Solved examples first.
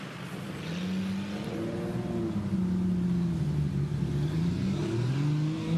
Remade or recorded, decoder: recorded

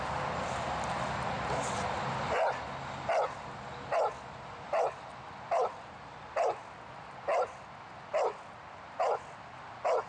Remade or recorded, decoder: recorded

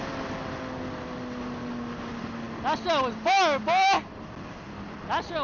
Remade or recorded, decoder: recorded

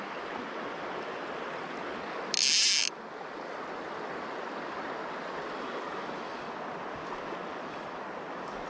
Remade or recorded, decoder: recorded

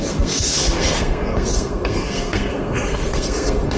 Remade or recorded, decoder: remade, codec, SNAC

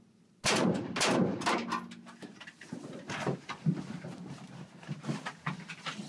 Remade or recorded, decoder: recorded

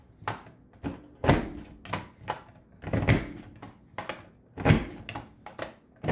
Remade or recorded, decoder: recorded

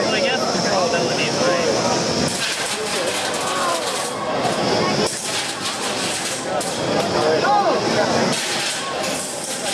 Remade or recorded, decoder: recorded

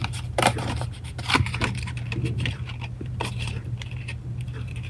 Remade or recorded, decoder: remade, vocoder, BigVGAN v2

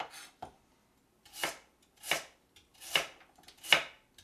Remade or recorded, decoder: recorded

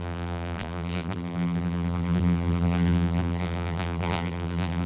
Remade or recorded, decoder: remade, vocoder, BigVGAN v2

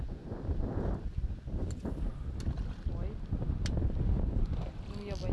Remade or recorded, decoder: recorded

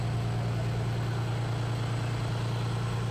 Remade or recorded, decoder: recorded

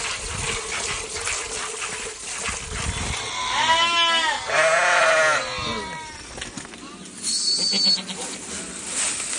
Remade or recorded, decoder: recorded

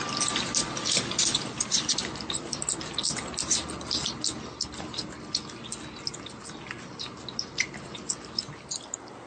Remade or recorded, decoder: recorded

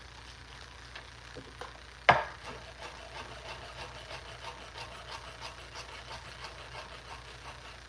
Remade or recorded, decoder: recorded